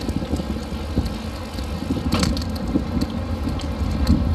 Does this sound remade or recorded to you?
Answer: recorded